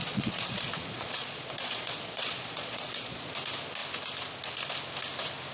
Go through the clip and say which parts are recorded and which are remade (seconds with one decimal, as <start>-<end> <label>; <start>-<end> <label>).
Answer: 0.0-3.3 remade; 3.3-5.5 recorded